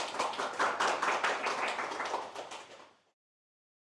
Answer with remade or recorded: recorded